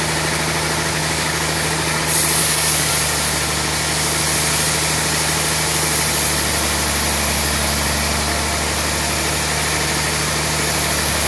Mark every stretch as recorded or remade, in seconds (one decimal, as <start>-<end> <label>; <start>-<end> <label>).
0.0-1.0 recorded; 1.0-2.0 remade; 2.0-2.4 recorded; 2.4-2.9 remade; 2.9-11.3 recorded

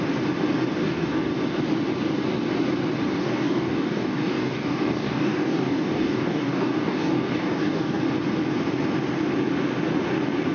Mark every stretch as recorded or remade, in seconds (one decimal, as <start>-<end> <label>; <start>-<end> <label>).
0.0-0.8 recorded; 0.8-1.3 remade; 1.3-3.2 recorded; 3.2-8.0 remade; 8.0-10.5 recorded

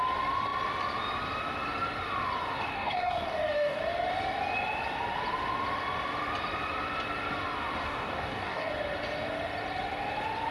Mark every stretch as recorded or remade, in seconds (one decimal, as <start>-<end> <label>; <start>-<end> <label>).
0.0-2.7 recorded; 2.7-3.8 remade; 3.8-7.8 recorded; 7.8-8.7 remade; 8.7-10.5 recorded

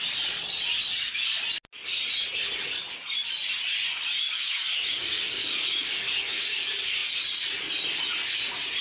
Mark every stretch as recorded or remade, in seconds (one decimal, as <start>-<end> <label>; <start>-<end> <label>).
0.0-4.2 recorded; 4.2-6.4 remade; 6.4-8.8 recorded

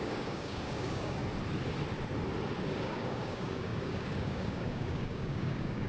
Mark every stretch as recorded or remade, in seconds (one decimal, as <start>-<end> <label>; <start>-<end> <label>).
0.0-1.2 remade; 1.2-2.8 recorded; 2.8-5.9 remade

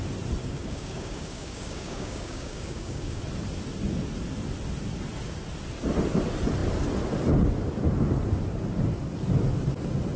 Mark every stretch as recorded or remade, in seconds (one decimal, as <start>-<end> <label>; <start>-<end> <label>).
0.0-0.4 recorded; 0.4-3.2 remade; 3.2-10.2 recorded

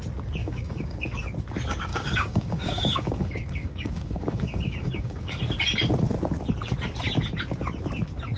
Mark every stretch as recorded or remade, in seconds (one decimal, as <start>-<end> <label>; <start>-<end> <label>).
0.0-0.4 recorded; 0.4-1.2 remade; 1.2-1.9 recorded; 1.9-5.4 remade; 5.4-8.4 recorded